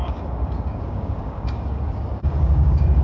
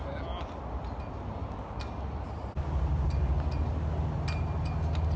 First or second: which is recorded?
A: second